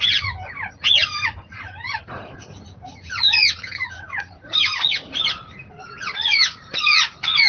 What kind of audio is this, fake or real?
fake